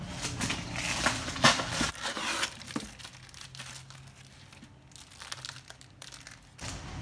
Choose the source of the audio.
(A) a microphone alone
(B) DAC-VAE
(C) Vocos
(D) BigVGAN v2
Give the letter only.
A